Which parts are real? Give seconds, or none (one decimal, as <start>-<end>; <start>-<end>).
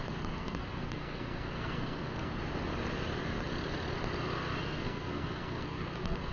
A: 2.4-4.6